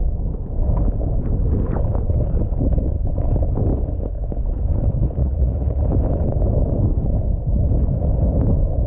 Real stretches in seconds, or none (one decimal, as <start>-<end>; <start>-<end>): 0.0-5.2; 5.8-8.9